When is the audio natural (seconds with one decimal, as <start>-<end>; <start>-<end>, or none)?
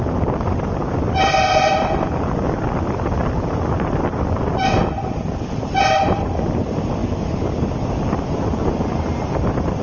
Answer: 0.0-9.8